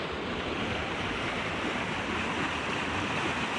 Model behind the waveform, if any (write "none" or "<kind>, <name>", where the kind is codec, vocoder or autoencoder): none